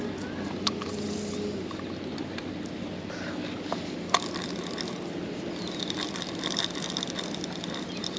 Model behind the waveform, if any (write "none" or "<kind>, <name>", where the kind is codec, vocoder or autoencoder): none